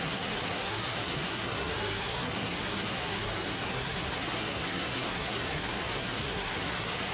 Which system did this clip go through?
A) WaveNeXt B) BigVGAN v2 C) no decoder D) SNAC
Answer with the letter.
D